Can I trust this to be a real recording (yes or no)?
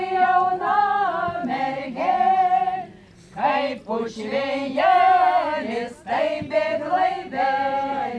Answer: yes